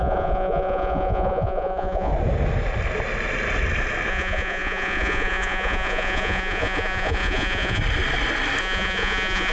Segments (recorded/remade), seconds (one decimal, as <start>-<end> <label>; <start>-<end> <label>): 0.0-2.1 remade; 2.1-4.1 recorded; 4.1-7.8 remade; 7.8-8.6 recorded; 8.6-9.5 remade